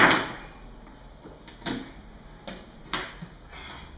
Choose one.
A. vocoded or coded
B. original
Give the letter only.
B